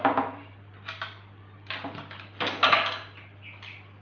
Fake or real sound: real